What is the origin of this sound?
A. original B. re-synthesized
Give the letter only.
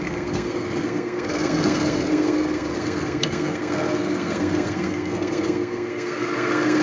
B